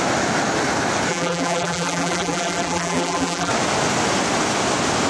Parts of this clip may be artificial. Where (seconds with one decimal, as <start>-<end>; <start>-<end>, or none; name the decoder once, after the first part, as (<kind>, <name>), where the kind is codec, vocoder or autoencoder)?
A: 1.1-3.5 (vocoder, BigVGAN v2)